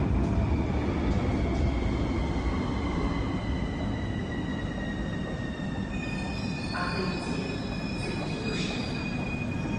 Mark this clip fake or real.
real